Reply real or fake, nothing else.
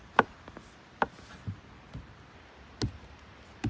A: real